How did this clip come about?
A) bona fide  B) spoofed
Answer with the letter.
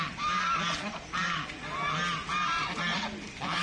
A